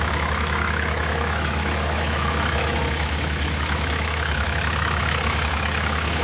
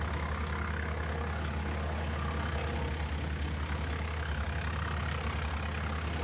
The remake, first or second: first